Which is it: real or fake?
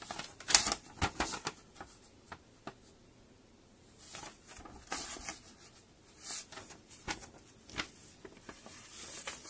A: real